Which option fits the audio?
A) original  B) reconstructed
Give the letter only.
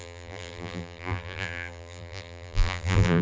B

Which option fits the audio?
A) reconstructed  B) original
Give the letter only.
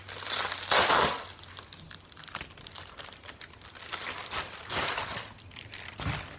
B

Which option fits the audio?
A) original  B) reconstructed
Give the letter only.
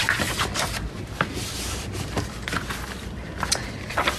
B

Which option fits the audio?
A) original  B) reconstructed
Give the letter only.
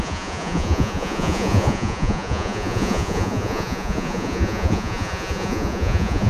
B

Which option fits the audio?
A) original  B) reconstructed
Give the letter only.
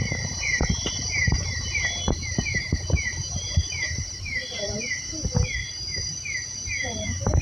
B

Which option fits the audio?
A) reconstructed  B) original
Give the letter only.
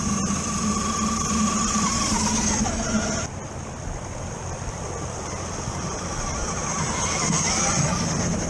B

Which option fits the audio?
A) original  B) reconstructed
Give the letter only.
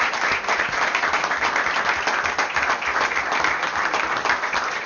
A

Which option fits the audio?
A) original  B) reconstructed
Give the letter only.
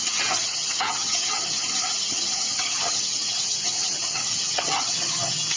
B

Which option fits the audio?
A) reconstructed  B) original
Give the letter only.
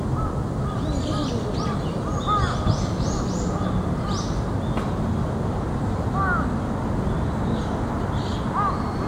B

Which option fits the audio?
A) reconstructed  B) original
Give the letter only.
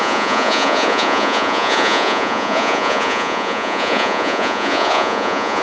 A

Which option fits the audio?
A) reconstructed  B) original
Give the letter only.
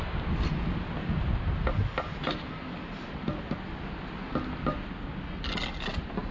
B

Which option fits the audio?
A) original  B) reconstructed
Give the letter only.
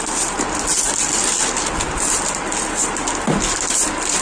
A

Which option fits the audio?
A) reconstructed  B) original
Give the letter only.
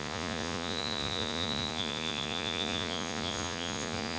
A